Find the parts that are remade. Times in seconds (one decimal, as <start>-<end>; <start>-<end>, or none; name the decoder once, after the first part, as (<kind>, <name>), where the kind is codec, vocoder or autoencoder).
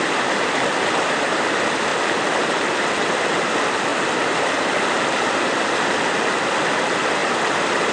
1.9-3.2 (vocoder, BigVGAN v2); 3.9-5.7; 7.2-7.9